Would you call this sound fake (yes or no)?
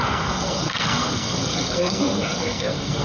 yes